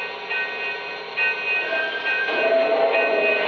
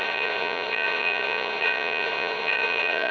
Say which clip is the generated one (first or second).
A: second